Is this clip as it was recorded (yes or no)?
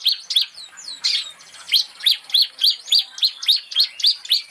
yes